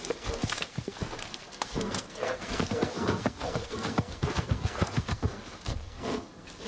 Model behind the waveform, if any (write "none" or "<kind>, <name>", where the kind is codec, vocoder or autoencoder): codec, SNAC